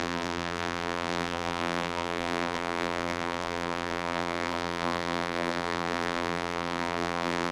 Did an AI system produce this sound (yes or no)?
yes